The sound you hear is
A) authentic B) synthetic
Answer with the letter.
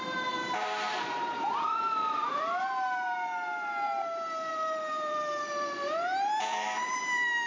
B